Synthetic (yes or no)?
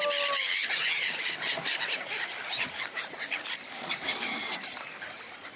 yes